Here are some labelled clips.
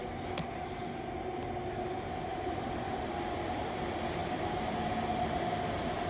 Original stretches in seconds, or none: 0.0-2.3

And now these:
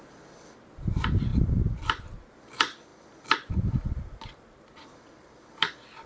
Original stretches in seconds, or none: 0.0-6.1

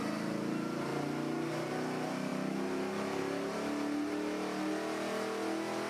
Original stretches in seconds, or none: 0.0-5.9